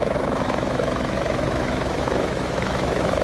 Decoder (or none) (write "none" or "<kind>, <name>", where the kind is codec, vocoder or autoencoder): autoencoder, DAC-VAE